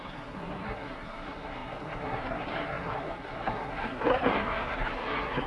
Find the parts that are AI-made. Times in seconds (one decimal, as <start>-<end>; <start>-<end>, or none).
0.0-5.5